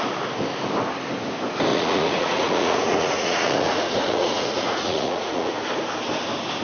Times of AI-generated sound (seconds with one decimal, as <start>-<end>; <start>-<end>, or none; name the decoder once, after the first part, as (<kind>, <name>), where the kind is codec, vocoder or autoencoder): 1.7-5.5 (vocoder, Vocos)